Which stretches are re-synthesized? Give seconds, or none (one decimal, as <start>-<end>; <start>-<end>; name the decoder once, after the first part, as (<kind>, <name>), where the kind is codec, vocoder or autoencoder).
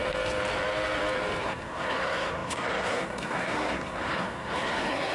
1.4-5.1 (codec, SNAC)